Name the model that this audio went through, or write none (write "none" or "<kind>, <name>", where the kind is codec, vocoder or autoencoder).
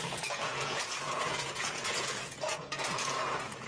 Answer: vocoder, Vocos